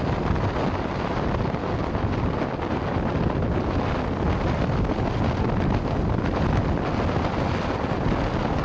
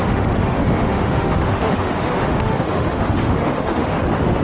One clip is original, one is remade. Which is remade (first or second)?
second